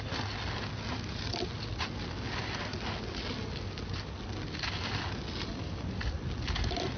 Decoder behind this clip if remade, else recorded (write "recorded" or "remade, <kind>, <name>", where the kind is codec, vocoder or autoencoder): recorded